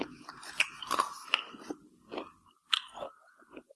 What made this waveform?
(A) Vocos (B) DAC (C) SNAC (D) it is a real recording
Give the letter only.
D